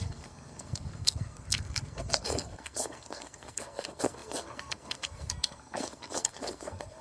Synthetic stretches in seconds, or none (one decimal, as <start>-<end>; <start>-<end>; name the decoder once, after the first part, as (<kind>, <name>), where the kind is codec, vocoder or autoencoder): 0.0-7.0 (codec, SNAC)